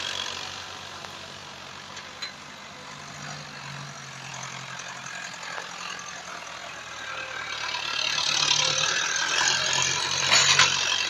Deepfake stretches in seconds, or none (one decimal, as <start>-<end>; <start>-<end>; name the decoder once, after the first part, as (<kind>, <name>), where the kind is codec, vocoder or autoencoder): none